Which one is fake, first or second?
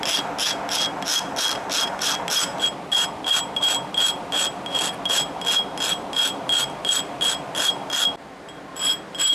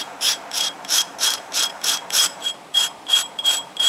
second